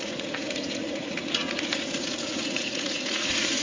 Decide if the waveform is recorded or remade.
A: remade